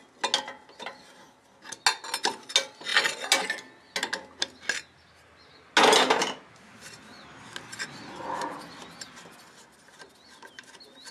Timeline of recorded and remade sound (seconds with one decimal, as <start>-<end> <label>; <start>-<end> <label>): 0.0-11.1 recorded